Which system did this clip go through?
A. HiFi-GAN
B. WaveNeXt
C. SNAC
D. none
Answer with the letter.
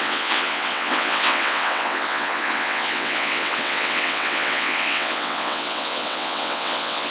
B